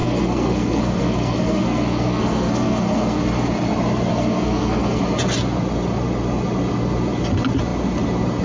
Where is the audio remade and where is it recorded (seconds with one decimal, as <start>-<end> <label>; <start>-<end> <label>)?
0.0-3.2 remade; 3.2-4.1 recorded; 4.1-5.0 remade; 5.0-8.4 recorded